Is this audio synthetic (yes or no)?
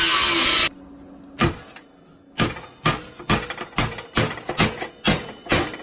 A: no